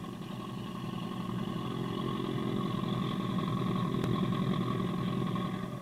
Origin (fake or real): real